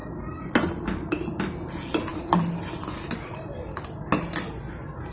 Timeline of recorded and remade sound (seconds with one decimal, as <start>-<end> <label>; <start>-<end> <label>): 0.0-5.1 recorded